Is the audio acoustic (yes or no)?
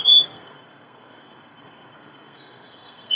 no